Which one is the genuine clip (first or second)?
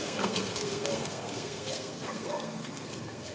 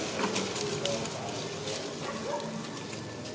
second